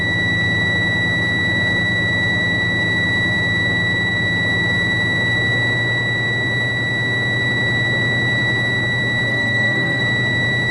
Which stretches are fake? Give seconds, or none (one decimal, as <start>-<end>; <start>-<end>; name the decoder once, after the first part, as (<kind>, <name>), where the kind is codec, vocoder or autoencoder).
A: 9.3-10.0 (codec, SNAC)